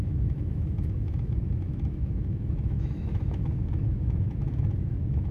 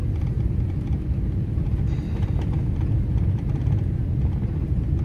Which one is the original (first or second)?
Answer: second